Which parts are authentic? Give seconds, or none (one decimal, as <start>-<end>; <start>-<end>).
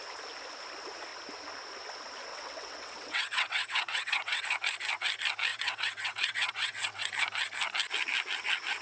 0.0-2.3; 4.4-5.5; 7.1-8.8